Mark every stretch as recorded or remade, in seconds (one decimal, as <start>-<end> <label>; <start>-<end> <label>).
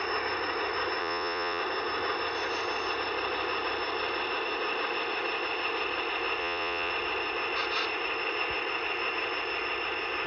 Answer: 0.0-1.0 recorded; 1.0-1.6 remade; 1.6-6.4 recorded; 6.4-6.9 remade; 6.9-10.3 recorded